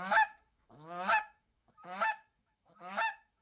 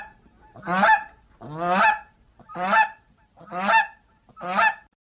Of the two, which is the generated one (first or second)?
first